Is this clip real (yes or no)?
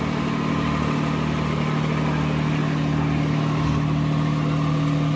yes